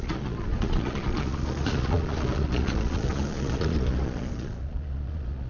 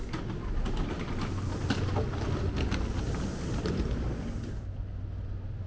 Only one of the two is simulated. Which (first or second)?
first